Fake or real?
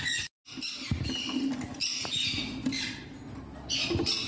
real